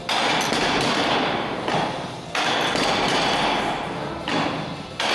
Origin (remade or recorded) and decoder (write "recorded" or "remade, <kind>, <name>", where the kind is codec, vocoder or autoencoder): recorded